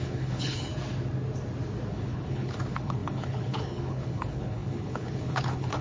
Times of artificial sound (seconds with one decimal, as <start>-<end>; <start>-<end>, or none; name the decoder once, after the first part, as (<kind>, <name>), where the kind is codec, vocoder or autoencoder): 0.0-0.7 (codec, HILCodec); 1.9-5.8